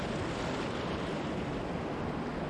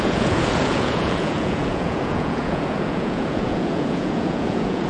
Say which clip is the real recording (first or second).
first